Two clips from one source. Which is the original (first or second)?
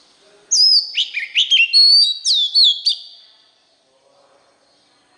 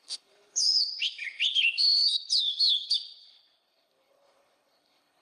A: first